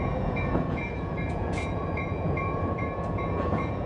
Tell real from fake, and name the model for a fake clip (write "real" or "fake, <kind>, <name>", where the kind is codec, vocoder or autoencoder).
fake, vocoder, Vocos